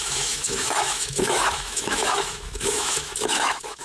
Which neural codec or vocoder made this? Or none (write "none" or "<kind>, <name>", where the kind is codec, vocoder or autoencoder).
autoencoder, DAC-VAE